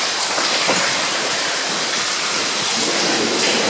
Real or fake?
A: fake